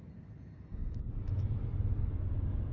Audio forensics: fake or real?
real